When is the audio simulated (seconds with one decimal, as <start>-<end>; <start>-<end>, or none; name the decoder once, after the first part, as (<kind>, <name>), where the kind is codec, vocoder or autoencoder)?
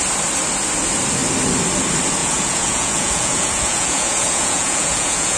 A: 2.2-5.4 (vocoder, Vocos)